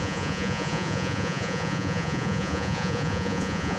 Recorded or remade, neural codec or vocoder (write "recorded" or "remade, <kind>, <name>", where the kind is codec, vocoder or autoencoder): remade, vocoder, Vocos